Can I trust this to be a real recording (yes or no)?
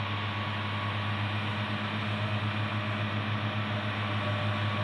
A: yes